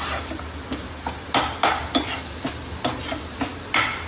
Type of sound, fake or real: real